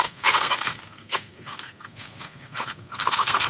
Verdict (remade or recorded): remade